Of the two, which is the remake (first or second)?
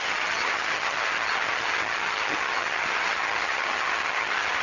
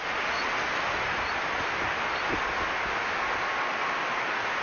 first